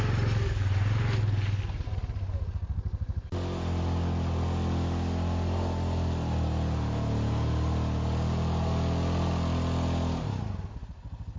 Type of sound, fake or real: real